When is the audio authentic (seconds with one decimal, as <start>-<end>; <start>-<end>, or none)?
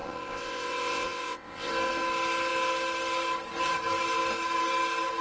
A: 1.7-5.2